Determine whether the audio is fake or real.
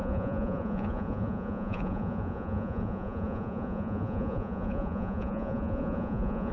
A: fake